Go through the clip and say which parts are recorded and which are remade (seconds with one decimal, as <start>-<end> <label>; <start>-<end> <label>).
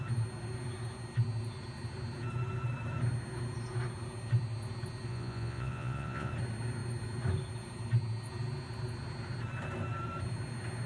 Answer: 0.0-5.1 recorded; 5.1-6.3 remade; 6.3-10.9 recorded